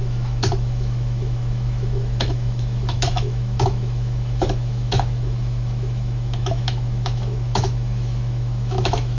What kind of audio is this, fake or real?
fake